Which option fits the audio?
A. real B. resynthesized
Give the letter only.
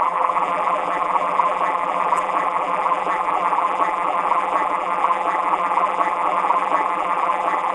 B